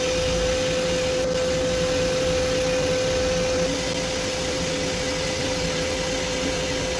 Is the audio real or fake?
real